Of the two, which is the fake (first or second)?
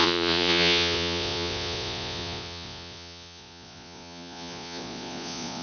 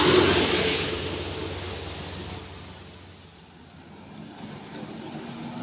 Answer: first